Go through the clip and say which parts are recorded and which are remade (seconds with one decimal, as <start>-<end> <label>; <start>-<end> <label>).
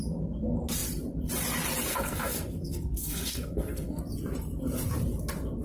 0.0-1.9 recorded; 1.9-4.0 remade; 4.0-5.6 recorded